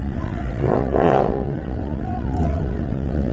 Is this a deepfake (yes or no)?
yes